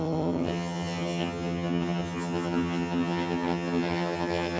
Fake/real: fake